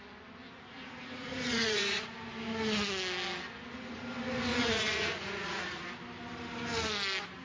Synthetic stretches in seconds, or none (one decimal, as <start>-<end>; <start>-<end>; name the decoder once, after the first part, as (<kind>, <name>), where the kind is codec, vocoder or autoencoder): 0.6-2.1 (vocoder, Vocos); 4.5-5.8